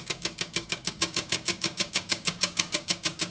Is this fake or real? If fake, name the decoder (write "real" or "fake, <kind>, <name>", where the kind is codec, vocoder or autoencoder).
fake, codec, DAC